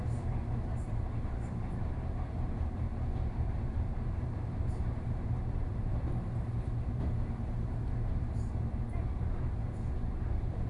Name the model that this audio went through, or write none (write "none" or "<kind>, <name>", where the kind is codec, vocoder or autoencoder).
vocoder, BigVGAN v2